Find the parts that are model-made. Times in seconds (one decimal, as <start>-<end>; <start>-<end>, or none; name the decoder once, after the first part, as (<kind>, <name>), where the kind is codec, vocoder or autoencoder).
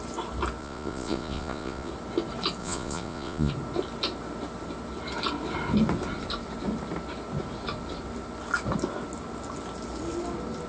0.6-1.9 (vocoder, Vocos); 2.6-3.5